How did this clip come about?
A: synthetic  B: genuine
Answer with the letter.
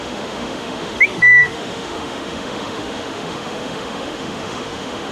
A